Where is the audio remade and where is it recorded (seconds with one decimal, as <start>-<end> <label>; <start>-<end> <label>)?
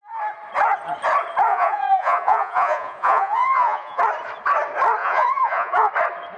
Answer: 0.0-1.5 recorded; 1.5-4.0 remade; 4.0-5.0 recorded; 5.0-5.9 remade; 5.9-6.4 recorded